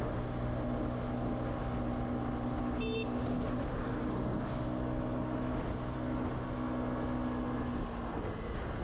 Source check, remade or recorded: recorded